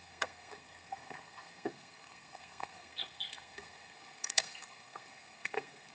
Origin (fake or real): fake